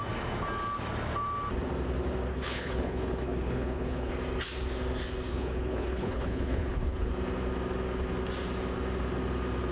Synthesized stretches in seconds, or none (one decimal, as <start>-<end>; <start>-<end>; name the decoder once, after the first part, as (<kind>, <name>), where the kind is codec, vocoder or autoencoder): 2.3-4.1 (codec, HILCodec); 5.3-7.1